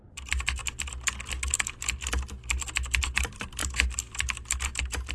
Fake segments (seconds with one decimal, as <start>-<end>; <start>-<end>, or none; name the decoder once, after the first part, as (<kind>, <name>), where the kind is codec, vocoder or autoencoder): 0.0-0.6 (vocoder, BigVGAN v2); 3.0-5.1